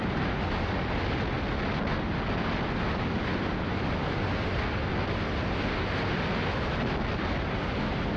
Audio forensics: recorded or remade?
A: recorded